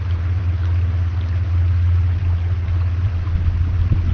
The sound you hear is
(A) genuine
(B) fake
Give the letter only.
A